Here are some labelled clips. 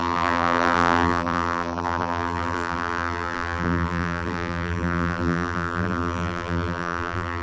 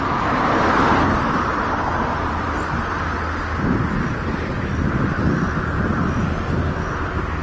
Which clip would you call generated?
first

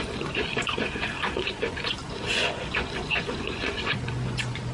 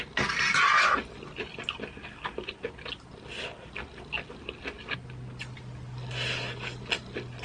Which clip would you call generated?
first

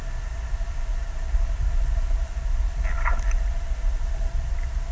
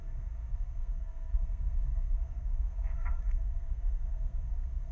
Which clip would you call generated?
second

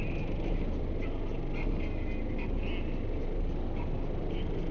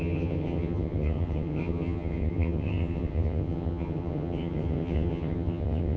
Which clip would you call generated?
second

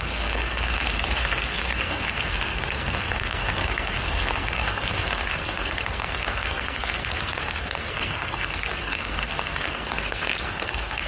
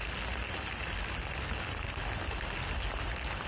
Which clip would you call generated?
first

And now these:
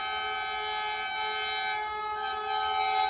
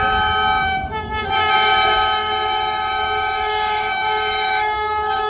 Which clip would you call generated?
second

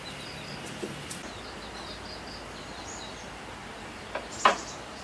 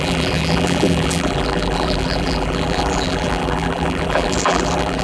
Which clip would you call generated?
second